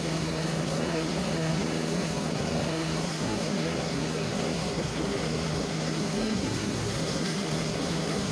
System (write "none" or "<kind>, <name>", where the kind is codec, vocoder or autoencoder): codec, SNAC